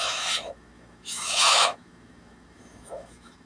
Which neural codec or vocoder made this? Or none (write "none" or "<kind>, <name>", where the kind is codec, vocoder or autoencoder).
autoencoder, DAC-VAE